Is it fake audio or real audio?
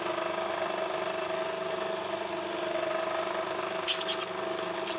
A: real